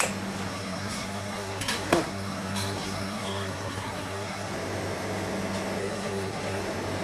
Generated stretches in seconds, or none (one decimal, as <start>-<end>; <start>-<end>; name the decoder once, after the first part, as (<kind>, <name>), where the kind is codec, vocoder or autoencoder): 0.5-4.5 (codec, SNAC); 5.8-6.6